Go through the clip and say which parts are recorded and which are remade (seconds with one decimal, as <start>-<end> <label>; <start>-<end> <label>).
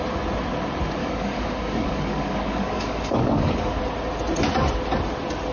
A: 0.0-1.0 recorded; 1.0-3.8 remade; 3.8-5.5 recorded